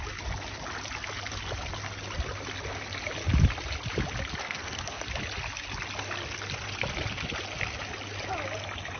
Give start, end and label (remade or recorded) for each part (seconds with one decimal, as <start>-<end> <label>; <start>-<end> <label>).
0.0-4.4 recorded; 4.4-5.0 remade; 5.0-9.0 recorded